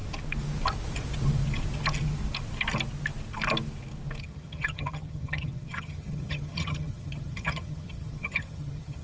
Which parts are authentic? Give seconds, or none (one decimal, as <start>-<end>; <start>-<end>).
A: 0.0-4.2

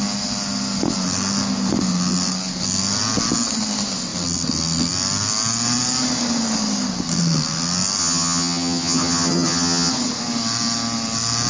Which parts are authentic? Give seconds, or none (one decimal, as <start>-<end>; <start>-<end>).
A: 0.0-8.0; 9.9-11.5

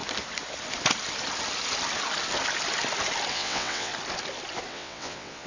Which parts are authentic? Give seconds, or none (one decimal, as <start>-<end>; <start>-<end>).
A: 0.0-3.3; 3.9-4.7

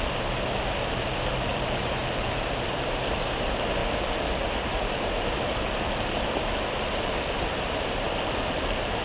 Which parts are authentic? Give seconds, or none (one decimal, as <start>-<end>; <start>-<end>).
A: 0.0-1.5; 2.5-3.8

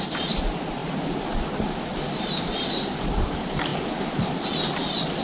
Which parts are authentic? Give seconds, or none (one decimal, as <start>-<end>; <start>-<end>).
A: 0.8-2.4; 3.7-4.7

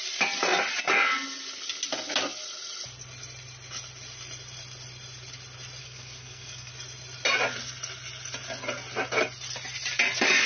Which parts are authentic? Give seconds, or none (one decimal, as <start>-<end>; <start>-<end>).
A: 0.0-5.8; 6.7-10.5

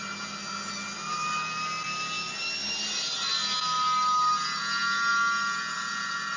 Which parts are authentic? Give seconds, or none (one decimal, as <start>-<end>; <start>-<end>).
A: 0.0-6.4

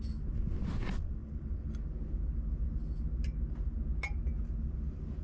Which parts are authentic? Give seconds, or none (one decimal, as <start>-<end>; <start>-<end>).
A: 0.0-5.2